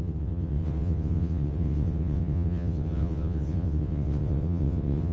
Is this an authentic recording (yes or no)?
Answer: no